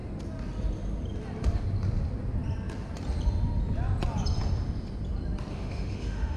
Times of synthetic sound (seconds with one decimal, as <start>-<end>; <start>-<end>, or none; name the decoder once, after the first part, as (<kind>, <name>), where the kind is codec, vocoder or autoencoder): 5.5-6.4 (autoencoder, DAC-VAE)